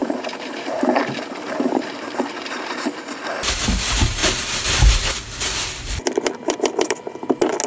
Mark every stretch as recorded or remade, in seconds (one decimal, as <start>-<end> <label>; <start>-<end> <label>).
0.0-3.2 remade; 3.2-7.7 recorded